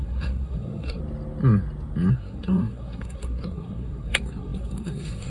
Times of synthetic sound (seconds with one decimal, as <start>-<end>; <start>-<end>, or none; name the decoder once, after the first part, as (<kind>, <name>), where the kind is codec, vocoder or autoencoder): 0.0-1.0 (codec, SNAC); 2.1-5.3